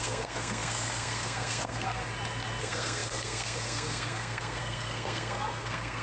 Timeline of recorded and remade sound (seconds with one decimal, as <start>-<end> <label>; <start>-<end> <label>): 0.0-2.0 remade; 2.0-2.6 recorded; 2.6-6.0 remade